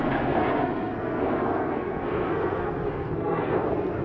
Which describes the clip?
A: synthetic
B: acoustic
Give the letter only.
A